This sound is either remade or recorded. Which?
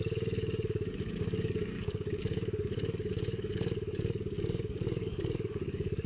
remade